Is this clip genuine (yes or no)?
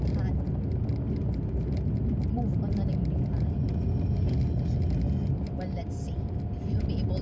yes